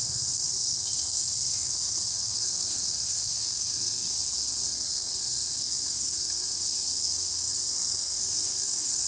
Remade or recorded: remade